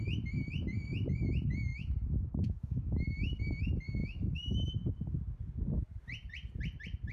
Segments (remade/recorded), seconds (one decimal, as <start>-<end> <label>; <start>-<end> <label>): 0.0-1.7 recorded; 1.7-3.4 remade; 3.4-4.0 recorded; 4.0-4.7 remade; 4.7-7.1 recorded